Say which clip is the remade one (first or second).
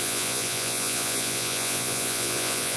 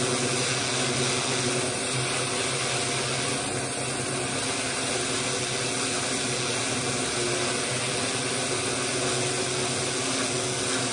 first